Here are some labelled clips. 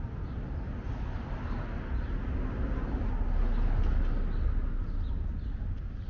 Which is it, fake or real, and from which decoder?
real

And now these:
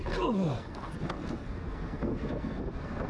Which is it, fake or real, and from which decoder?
fake, codec, SNAC